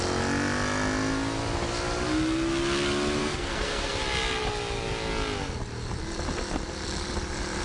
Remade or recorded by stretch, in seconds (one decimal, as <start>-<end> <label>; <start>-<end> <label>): 0.0-3.2 recorded; 3.2-4.0 remade; 4.0-7.6 recorded